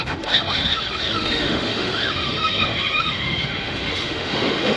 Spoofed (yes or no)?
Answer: yes